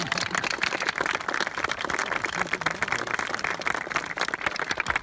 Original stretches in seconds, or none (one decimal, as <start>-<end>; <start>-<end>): 0.0-1.6